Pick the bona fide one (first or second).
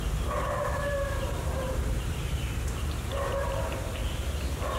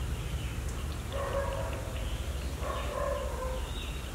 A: second